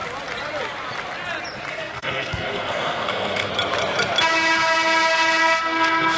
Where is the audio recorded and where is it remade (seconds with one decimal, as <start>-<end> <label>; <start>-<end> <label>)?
0.0-1.7 recorded; 1.7-3.5 remade; 3.5-5.4 recorded; 5.4-6.2 remade

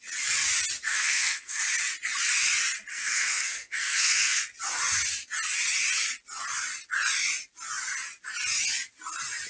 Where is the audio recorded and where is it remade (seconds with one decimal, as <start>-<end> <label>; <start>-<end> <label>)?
0.0-0.9 recorded; 0.9-1.6 remade; 1.6-2.9 recorded; 2.9-4.4 remade; 4.4-9.5 recorded

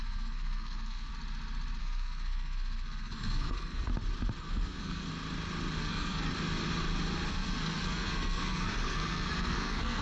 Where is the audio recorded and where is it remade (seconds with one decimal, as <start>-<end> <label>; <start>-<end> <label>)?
0.0-1.1 remade; 1.1-1.8 recorded; 1.8-3.9 remade; 3.9-4.4 recorded; 4.4-5.1 remade; 5.1-5.8 recorded; 5.8-6.3 remade; 6.3-7.3 recorded; 7.3-10.0 remade

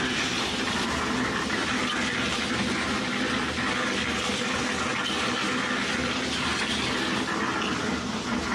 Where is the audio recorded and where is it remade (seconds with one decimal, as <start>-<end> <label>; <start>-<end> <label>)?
0.0-8.5 recorded

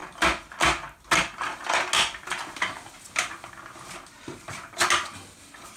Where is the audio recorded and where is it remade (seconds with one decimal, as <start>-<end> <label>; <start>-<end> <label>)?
0.0-5.8 recorded